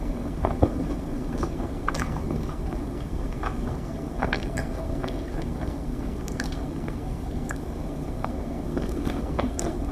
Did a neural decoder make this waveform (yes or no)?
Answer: yes